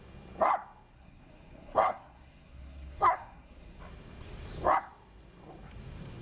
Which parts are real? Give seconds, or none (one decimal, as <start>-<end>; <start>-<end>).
0.0-0.9; 3.8-6.2